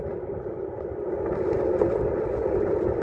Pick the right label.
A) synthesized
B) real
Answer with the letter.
B